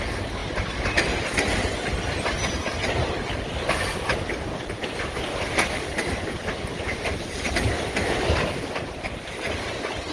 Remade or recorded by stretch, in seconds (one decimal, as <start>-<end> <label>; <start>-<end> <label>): 0.0-10.1 recorded